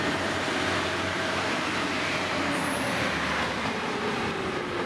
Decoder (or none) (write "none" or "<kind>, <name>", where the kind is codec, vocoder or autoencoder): none